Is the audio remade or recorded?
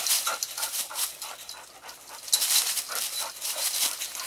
recorded